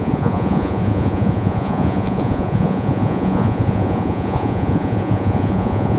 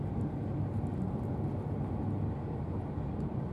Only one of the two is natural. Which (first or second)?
second